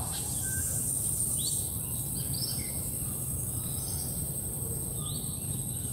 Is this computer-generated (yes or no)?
yes